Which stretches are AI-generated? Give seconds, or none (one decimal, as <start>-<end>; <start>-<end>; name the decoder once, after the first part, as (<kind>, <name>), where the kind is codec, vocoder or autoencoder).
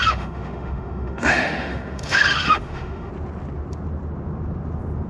0.0-3.1 (autoencoder, DAC-VAE)